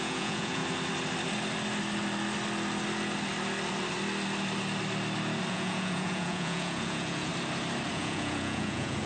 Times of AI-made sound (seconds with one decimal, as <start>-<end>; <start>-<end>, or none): 0.0-0.6; 5.5-7.3; 7.9-9.1